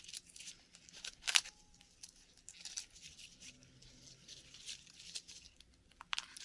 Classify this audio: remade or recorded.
recorded